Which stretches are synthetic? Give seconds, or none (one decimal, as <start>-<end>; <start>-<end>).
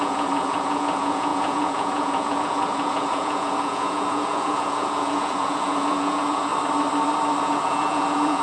0.0-6.5; 7.4-8.4